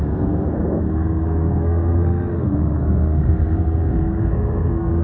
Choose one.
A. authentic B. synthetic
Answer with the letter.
B